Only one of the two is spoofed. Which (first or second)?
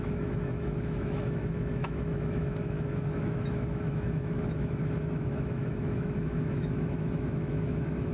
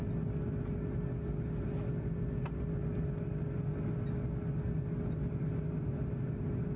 first